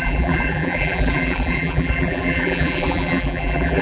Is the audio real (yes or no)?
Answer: no